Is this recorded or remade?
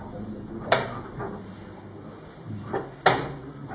recorded